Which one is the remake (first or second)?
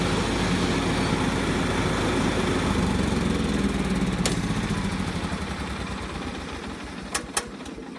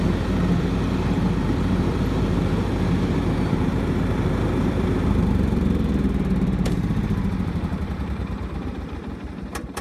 second